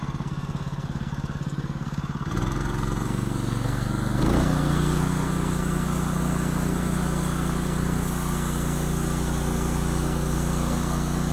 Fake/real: fake